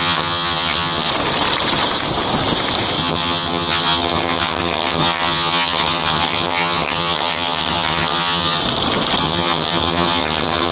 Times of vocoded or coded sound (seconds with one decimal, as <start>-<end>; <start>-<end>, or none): 0.0-1.1; 3.0-8.6; 9.2-10.7